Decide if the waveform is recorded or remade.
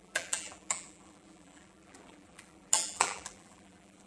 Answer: remade